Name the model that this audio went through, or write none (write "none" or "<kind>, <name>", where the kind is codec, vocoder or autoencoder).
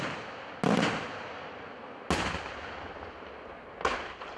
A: none